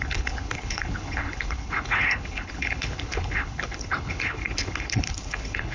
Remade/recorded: remade